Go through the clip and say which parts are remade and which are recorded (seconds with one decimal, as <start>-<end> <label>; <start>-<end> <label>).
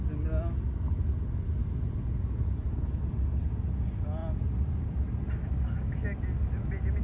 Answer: 0.0-7.0 recorded